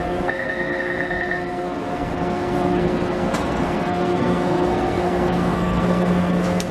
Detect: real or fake fake